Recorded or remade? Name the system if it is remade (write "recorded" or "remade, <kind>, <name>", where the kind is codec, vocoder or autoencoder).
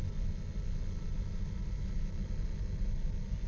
recorded